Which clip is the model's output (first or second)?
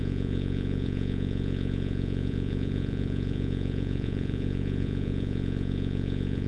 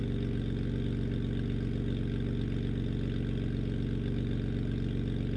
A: first